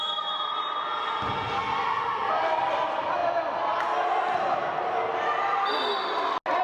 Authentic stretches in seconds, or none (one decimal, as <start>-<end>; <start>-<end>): 0.0-6.6